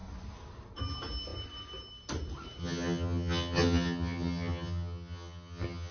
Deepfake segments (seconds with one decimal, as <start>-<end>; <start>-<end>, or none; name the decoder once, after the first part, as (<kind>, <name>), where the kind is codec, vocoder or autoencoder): 2.6-5.9 (vocoder, HiFi-GAN)